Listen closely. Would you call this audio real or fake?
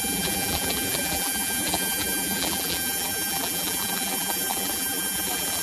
fake